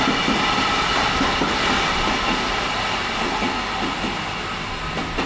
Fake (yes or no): no